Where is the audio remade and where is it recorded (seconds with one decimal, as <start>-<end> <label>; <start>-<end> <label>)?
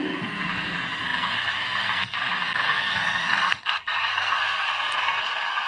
0.0-5.7 remade